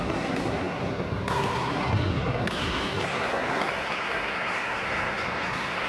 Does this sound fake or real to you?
fake